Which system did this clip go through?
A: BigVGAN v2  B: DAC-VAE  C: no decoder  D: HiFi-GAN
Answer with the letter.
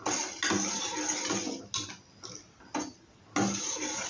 C